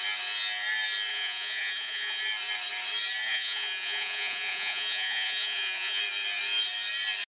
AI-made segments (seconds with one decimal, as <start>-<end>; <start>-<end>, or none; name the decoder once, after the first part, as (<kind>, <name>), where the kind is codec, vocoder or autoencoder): 1.1-2.2 (vocoder, Vocos); 3.3-6.0